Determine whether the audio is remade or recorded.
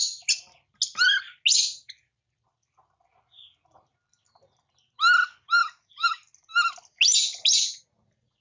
recorded